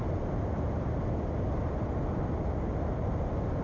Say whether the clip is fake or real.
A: real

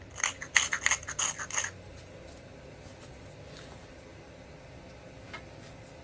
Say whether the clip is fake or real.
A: real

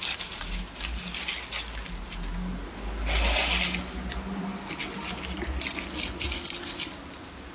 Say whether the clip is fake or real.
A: real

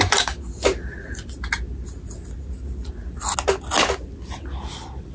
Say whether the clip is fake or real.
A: real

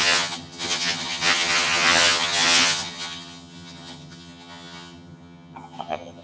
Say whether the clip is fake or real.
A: fake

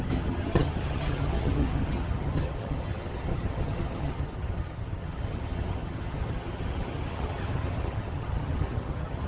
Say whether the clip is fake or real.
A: fake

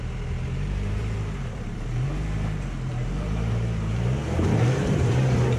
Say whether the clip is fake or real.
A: fake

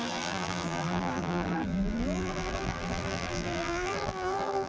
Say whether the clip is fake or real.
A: fake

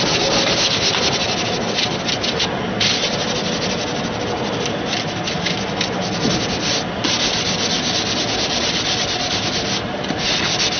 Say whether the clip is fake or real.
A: real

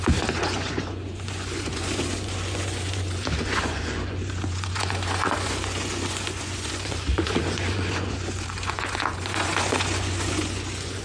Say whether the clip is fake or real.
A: fake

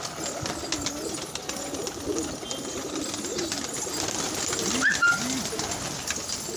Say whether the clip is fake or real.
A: real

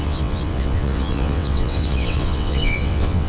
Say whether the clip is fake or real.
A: fake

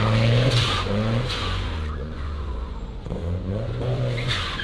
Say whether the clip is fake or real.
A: fake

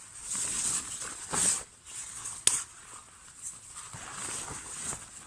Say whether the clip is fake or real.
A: real